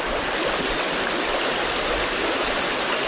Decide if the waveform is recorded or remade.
recorded